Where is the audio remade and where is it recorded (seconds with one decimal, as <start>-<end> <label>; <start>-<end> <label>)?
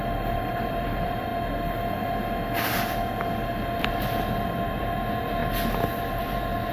0.0-1.3 remade; 1.3-3.8 recorded; 3.8-5.4 remade; 5.4-6.0 recorded; 6.0-6.7 remade